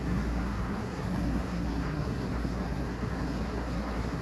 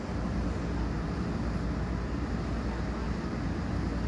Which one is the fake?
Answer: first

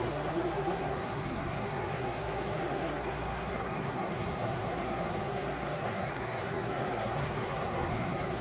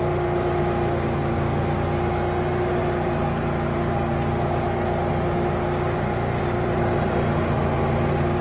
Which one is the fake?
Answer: first